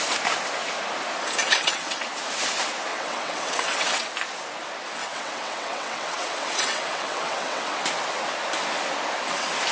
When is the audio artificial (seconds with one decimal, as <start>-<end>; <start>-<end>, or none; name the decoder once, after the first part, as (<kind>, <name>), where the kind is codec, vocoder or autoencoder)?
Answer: 1.4-2.0 (vocoder, WaveNeXt); 2.9-4.1; 5.0-7.8